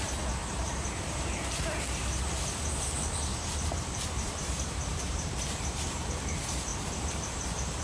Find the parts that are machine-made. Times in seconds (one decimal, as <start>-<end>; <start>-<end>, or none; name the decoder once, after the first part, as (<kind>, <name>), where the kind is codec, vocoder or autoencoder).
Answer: 0.4-1.0 (vocoder, BigVGAN v2); 3.3-6.1; 6.7-7.8